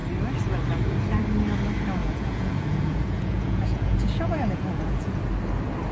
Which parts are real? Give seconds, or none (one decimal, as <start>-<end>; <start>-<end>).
0.0-2.0; 5.2-5.9